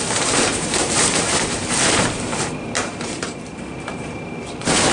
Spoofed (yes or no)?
yes